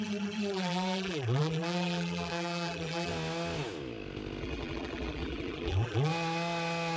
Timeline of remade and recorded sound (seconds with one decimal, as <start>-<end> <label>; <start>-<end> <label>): 0.0-3.1 remade; 3.1-4.4 recorded; 4.4-6.1 remade; 6.1-7.0 recorded